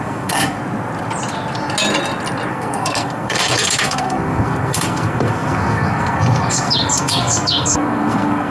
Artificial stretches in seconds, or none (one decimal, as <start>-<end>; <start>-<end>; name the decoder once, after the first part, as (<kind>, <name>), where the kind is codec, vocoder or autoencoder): 0.0-0.6 (codec, SNAC); 2.5-8.5